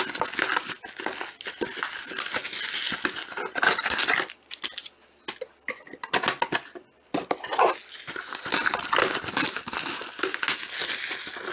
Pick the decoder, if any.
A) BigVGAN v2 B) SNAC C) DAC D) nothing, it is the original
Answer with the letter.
D